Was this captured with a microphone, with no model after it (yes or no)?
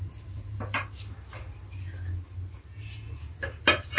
yes